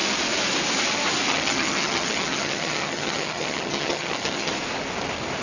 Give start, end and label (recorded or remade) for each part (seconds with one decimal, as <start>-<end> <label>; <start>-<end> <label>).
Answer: 0.0-1.3 recorded; 1.3-4.5 remade; 4.5-5.4 recorded